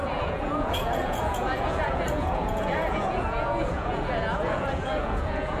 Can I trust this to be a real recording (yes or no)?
no